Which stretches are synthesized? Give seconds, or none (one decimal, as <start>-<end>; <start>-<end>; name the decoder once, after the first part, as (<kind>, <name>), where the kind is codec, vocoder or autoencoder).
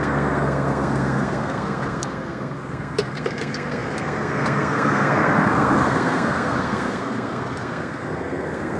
0.0-8.8 (codec, SNAC)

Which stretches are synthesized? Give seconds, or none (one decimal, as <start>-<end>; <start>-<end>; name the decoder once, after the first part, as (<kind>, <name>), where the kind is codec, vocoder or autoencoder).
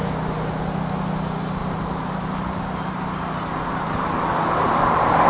1.6-4.8 (vocoder, BigVGAN v2)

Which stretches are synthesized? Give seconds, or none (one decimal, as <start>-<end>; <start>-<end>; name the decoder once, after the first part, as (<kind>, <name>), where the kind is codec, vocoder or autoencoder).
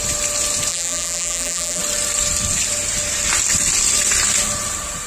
0.7-1.8 (vocoder, BigVGAN v2)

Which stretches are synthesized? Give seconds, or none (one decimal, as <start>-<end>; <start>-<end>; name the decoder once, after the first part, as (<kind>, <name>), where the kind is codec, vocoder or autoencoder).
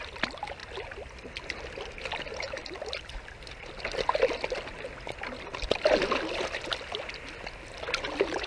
none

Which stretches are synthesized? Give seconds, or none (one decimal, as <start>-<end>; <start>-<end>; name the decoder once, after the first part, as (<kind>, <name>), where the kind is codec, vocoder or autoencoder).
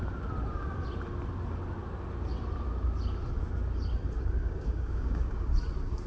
4.4-5.5 (codec, DAC)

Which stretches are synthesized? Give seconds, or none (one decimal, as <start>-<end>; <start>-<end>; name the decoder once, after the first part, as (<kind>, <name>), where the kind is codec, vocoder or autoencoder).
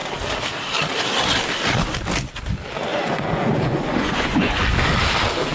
2.9-4.6 (vocoder, Vocos)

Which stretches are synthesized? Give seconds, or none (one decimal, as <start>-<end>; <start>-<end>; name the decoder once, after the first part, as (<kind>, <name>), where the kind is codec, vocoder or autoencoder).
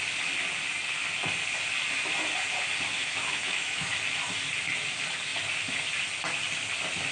3.0-3.9 (autoencoder, DAC-VAE)